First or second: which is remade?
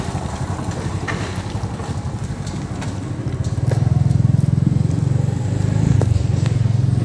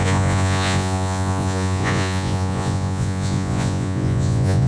second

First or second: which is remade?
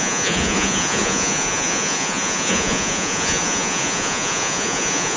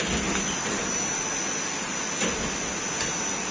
first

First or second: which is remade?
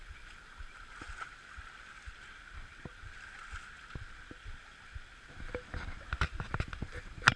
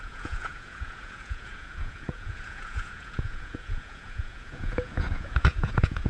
second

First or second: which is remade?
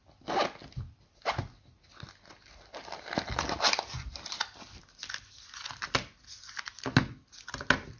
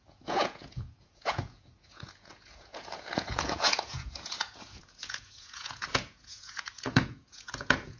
second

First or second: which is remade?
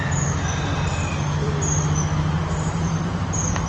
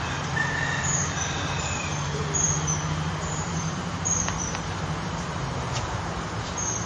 second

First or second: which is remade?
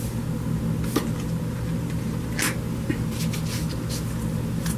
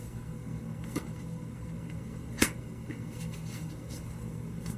second